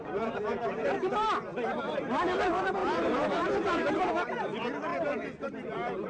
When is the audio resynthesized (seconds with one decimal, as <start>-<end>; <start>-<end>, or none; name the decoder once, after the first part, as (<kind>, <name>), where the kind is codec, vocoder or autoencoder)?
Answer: 1.5-2.4 (vocoder, BigVGAN v2); 2.8-4.1; 4.9-6.1